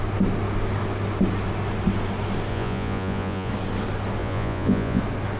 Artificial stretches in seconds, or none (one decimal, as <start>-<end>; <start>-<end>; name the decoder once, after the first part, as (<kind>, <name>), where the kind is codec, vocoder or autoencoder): 2.5-3.5 (vocoder, Vocos); 4.2-5.0